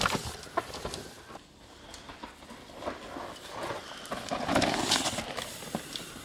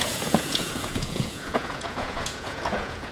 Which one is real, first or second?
first